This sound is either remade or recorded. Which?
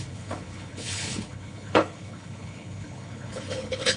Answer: remade